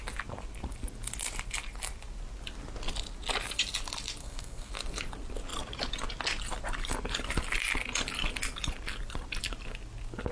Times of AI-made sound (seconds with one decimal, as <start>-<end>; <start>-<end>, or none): 4.2-4.7